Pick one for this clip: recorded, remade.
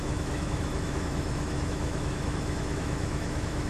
remade